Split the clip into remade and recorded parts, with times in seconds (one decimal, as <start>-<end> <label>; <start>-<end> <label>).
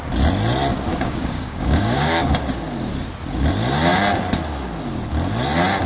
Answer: 0.0-0.9 recorded; 0.9-2.3 remade; 2.3-5.9 recorded